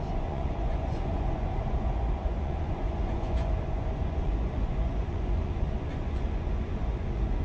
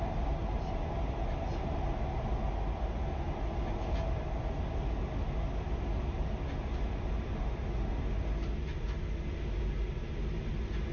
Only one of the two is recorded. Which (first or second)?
second